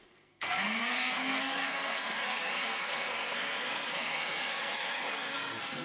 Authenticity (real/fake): fake